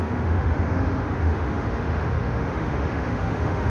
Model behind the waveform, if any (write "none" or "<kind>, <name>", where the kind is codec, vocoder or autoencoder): autoencoder, DAC-VAE